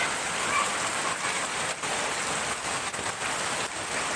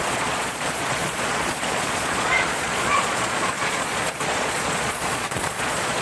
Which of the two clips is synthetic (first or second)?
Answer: second